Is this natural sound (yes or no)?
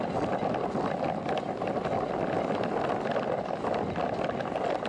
yes